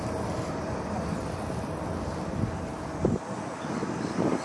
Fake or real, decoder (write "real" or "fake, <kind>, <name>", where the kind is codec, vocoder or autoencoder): real